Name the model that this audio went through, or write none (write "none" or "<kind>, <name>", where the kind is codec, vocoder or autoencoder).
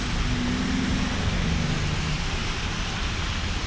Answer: none